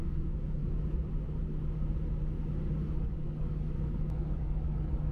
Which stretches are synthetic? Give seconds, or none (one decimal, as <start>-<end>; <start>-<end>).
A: 0.0-0.6; 3.0-5.1